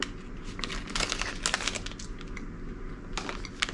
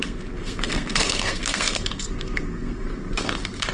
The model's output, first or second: second